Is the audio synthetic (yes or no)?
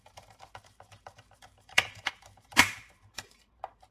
yes